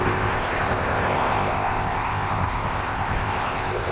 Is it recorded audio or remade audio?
remade